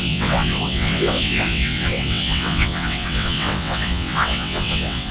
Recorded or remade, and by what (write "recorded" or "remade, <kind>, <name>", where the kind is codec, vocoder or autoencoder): remade, vocoder, WaveNeXt